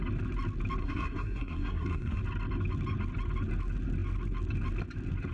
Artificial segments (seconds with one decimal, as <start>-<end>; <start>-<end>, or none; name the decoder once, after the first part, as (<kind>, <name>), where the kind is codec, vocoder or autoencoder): 0.8-2.2 (codec, SNAC)